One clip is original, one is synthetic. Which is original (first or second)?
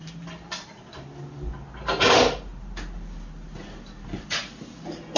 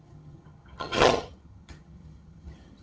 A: first